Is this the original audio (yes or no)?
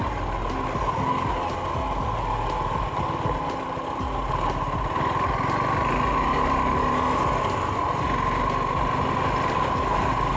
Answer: yes